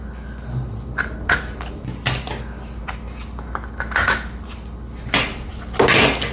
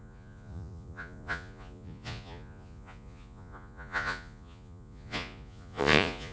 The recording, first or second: first